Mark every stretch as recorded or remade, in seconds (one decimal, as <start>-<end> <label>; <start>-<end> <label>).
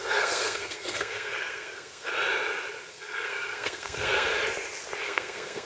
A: 0.0-2.1 remade; 2.1-2.9 recorded; 2.9-4.3 remade; 4.3-5.0 recorded; 5.0-5.7 remade